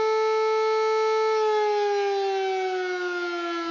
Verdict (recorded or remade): recorded